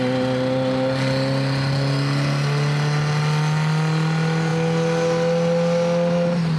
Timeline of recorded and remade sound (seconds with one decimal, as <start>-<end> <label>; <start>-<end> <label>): 0.0-6.6 recorded

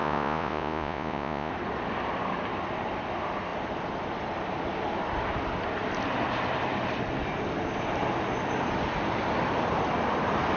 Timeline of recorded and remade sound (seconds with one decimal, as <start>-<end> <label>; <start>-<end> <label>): 0.0-1.5 remade; 1.5-10.6 recorded

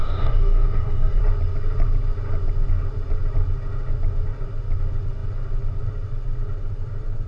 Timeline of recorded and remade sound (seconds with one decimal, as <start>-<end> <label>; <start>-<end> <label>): 0.0-1.2 remade; 1.2-7.3 recorded

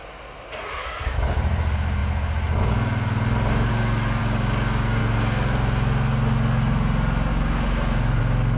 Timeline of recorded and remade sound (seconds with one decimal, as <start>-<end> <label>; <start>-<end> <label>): 0.0-4.2 recorded; 4.2-5.0 remade; 5.0-7.3 recorded; 7.3-8.2 remade; 8.2-8.6 recorded

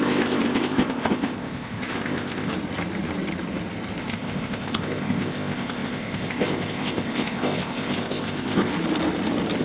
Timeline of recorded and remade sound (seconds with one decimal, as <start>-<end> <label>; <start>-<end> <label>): 0.0-2.5 remade; 2.5-4.0 recorded; 4.0-8.7 remade; 8.7-9.6 recorded